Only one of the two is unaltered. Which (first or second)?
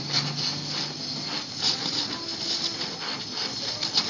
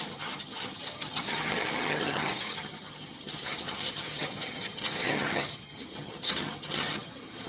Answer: first